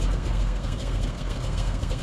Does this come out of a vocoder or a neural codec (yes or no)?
yes